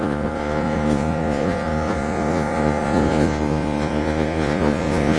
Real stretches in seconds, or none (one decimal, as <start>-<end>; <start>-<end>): none